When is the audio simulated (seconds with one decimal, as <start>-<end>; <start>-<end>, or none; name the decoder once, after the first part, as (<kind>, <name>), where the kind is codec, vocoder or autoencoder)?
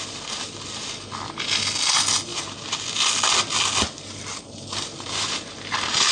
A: none